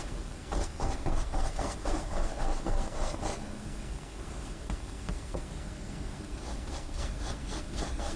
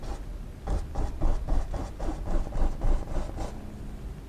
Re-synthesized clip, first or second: first